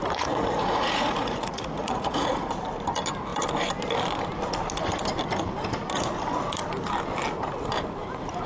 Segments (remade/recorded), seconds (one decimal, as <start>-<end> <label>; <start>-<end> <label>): 0.0-2.5 remade; 2.5-8.5 recorded

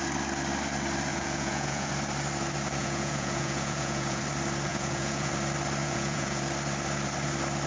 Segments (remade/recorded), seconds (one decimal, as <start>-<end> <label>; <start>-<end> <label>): 0.0-1.1 recorded; 1.1-1.9 remade; 1.9-2.8 recorded; 2.8-4.2 remade; 4.2-4.7 recorded; 4.7-5.3 remade; 5.3-5.8 recorded; 5.8-6.4 remade; 6.4-7.7 recorded

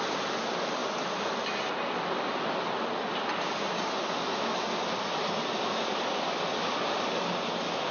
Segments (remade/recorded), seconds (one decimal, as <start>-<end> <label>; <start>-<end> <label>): 0.0-7.9 recorded

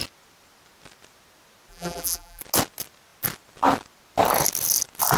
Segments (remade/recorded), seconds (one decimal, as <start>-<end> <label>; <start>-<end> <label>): 0.0-1.7 recorded; 1.7-2.4 remade; 2.4-5.2 recorded

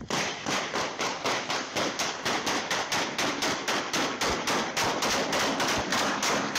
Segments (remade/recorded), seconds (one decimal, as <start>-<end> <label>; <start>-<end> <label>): 0.0-5.9 recorded; 5.9-6.6 remade